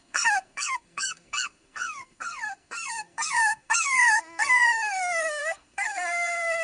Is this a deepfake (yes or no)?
yes